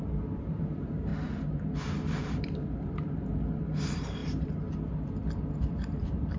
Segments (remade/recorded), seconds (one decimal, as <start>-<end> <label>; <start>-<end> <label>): 0.0-1.1 remade; 1.1-2.2 recorded; 2.2-4.2 remade; 4.2-5.7 recorded; 5.7-6.4 remade